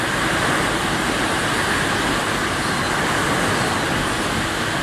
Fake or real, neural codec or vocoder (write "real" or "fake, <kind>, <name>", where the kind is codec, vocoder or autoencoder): real